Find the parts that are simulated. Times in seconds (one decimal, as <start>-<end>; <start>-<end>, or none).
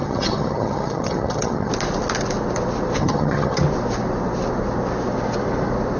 0.0-1.7; 3.0-3.6